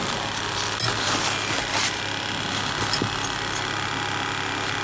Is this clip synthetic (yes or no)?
no